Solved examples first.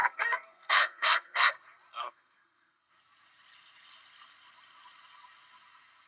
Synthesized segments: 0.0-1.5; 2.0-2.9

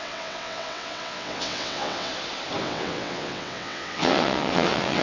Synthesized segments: 0.0-2.1; 2.6-5.0

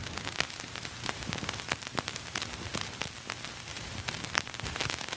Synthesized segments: 3.7-5.2